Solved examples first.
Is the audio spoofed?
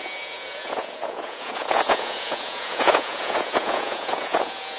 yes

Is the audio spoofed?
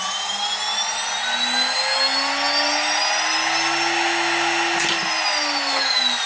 no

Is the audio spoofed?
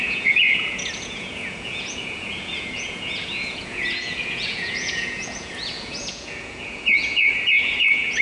yes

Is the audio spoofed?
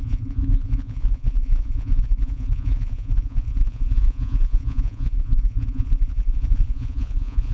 yes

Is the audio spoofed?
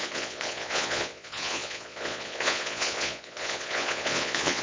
yes